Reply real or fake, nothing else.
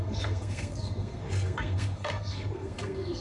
fake